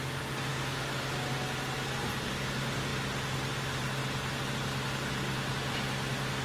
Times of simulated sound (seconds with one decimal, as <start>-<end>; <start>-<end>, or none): none

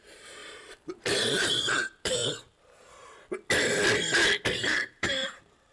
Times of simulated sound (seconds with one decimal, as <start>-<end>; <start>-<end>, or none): 0.0-2.2; 4.6-5.7

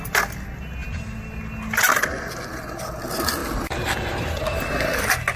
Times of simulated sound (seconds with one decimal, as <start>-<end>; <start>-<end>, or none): none

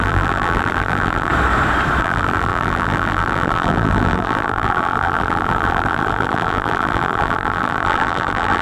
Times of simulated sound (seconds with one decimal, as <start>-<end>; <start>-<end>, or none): 0.0-1.3; 2.0-8.6